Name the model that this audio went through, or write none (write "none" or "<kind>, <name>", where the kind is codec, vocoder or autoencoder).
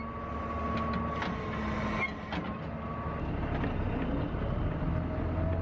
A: none